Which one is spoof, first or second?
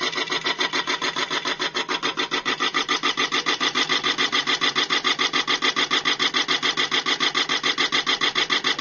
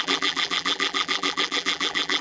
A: second